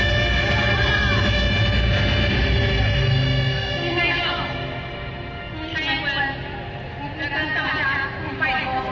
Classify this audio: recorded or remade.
recorded